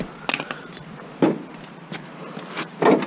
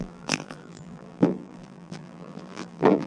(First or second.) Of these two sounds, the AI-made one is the second